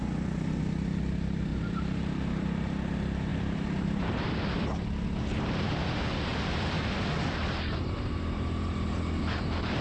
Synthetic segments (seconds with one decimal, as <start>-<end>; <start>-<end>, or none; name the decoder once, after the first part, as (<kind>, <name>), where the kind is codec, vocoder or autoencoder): 1.5-2.4 (vocoder, BigVGAN v2); 3.3-4.3